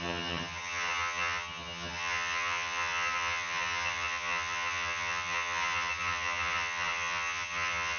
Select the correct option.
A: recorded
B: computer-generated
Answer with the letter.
B